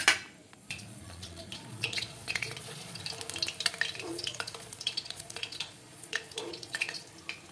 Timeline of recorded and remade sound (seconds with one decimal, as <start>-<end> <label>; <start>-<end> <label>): 0.0-0.4 recorded; 0.4-3.0 remade; 3.0-4.1 recorded; 4.1-7.1 remade; 7.1-7.5 recorded